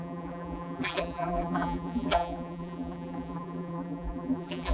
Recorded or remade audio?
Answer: remade